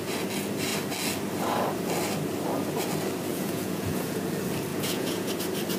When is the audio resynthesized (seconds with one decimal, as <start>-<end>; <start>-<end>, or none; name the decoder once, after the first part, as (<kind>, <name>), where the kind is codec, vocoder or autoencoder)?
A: 3.3-4.2 (vocoder, Vocos); 4.7-5.3